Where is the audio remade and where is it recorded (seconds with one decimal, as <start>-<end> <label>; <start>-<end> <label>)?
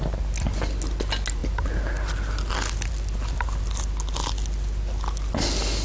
0.0-5.8 recorded